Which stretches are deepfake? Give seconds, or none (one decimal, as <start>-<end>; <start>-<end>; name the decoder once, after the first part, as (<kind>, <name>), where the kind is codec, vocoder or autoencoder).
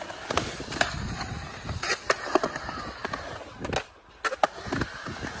none